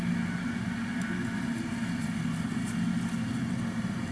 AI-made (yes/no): no